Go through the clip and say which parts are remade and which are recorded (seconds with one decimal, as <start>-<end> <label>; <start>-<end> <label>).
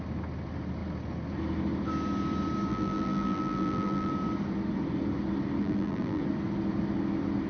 0.0-2.7 recorded; 2.7-4.1 remade; 4.1-5.6 recorded; 5.6-6.2 remade; 6.2-7.5 recorded